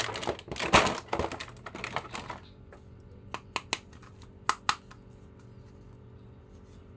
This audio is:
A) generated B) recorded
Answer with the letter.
B